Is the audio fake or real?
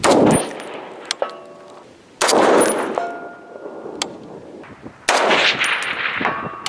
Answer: real